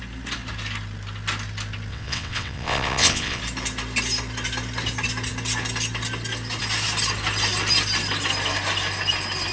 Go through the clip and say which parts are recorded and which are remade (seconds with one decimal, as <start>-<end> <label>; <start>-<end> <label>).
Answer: 0.0-1.9 recorded; 1.9-3.4 remade; 3.4-9.5 recorded